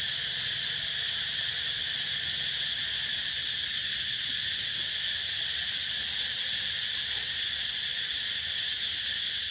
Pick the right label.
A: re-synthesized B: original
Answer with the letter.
B